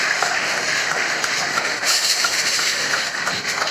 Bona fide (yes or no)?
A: no